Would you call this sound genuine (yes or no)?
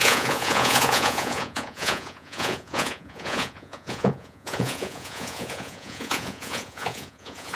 no